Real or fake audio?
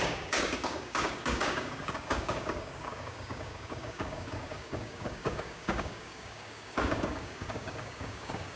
fake